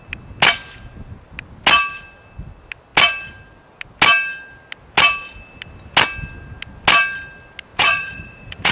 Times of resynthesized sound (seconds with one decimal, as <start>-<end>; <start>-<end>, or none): 7.7-8.7